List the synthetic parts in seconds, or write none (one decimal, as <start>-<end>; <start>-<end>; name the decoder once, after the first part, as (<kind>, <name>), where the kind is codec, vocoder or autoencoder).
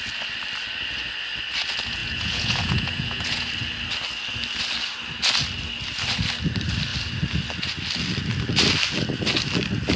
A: 2.0-3.5 (vocoder, Vocos)